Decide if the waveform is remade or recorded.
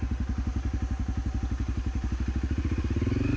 recorded